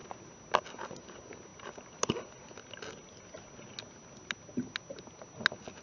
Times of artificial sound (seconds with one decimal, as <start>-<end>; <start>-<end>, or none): none